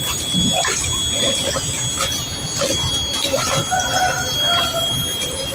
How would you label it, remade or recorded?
recorded